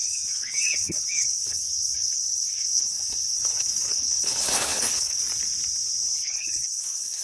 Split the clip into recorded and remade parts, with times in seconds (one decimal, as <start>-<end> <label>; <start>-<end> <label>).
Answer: 0.0-5.2 remade; 5.2-6.2 recorded; 6.2-7.2 remade